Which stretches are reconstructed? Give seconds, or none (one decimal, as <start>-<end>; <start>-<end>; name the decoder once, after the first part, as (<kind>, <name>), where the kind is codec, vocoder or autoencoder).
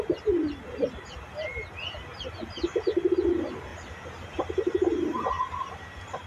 none